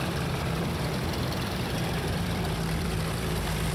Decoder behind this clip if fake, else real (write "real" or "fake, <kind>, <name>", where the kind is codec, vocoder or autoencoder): fake, vocoder, BigVGAN v2